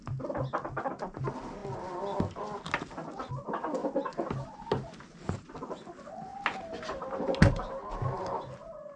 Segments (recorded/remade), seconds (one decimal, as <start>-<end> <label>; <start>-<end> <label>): 0.0-9.0 recorded